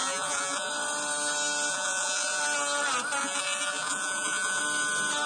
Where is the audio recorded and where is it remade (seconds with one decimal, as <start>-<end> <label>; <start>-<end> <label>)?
0.0-0.7 remade; 0.7-1.7 recorded; 1.7-2.4 remade; 2.4-3.2 recorded; 3.2-4.6 remade; 4.6-5.3 recorded